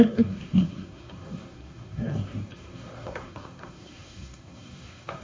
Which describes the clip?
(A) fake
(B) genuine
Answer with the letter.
A